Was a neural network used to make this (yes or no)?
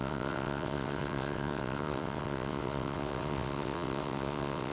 yes